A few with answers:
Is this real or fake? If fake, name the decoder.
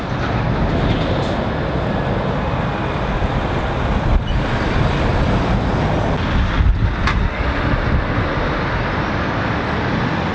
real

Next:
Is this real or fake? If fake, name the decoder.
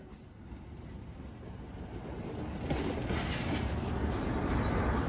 real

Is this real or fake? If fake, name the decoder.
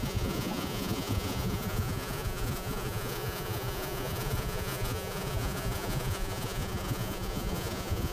fake, vocoder, Vocos